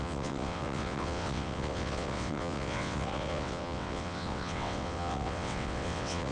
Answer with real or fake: fake